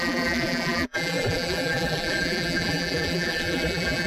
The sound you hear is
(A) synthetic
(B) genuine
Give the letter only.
A